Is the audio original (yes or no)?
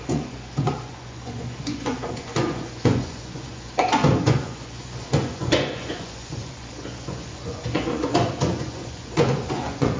no